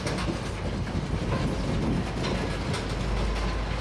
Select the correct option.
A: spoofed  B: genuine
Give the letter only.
B